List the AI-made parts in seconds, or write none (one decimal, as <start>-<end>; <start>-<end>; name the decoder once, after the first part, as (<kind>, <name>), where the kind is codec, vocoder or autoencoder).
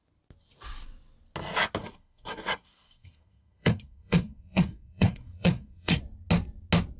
1.8-6.0 (codec, SNAC)